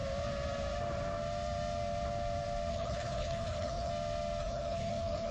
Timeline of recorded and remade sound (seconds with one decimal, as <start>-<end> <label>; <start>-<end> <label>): 0.0-2.7 recorded; 2.7-3.9 remade; 3.9-4.4 recorded; 4.4-5.3 remade